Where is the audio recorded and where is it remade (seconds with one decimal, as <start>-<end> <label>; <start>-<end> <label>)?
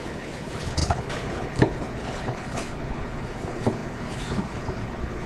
0.0-5.3 remade